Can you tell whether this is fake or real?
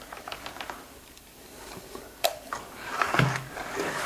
fake